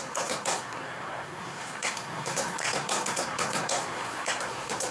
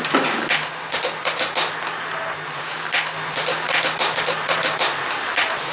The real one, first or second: second